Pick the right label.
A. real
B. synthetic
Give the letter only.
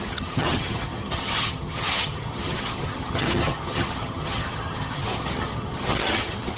B